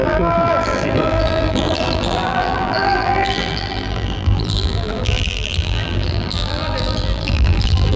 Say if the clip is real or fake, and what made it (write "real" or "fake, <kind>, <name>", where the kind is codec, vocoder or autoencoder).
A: fake, vocoder, BigVGAN v2